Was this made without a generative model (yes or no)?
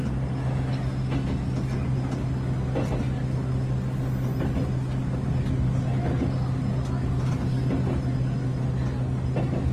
yes